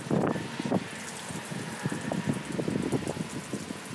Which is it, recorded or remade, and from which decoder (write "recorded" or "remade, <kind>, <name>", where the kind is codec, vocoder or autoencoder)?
recorded